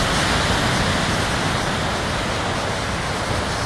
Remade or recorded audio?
recorded